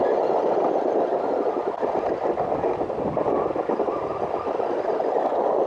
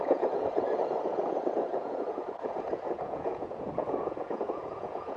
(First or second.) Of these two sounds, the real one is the first